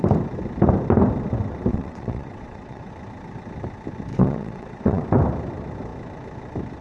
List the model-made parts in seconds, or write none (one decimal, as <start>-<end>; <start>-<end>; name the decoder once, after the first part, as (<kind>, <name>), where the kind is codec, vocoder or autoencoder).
1.7-2.9 (vocoder, WaveNeXt); 4.1-5.0